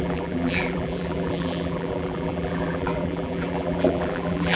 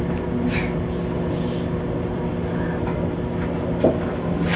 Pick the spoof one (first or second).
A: first